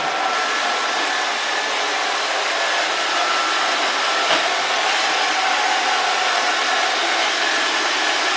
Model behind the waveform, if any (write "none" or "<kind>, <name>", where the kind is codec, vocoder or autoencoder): none